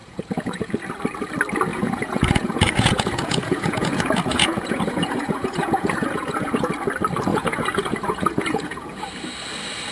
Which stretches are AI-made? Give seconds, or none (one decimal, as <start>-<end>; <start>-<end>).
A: 0.0-0.7; 1.7-6.7; 7.3-9.0